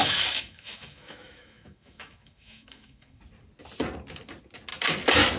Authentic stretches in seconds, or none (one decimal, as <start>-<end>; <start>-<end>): 3.2-5.4